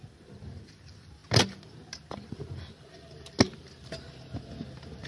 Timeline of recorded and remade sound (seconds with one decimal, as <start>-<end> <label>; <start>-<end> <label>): 0.0-5.1 recorded